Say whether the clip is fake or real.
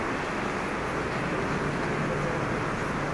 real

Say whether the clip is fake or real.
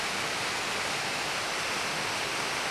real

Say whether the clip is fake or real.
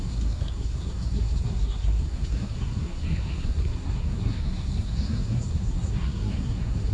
fake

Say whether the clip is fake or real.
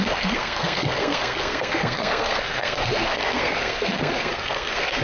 fake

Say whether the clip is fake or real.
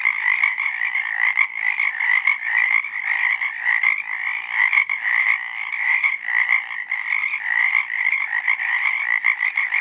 real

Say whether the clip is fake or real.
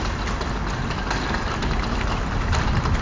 real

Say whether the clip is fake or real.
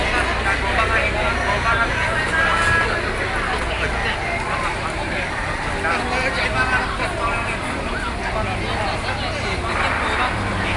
real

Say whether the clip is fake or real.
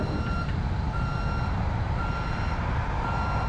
fake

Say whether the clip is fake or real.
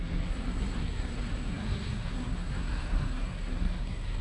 fake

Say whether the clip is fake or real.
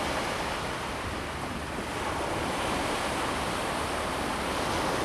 real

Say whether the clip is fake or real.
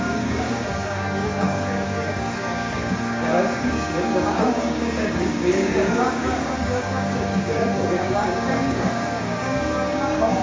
fake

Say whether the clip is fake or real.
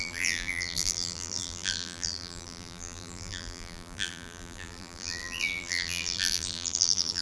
fake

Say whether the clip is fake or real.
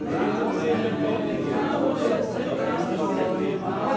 real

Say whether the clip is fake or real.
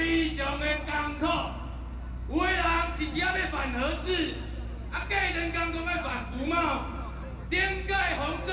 real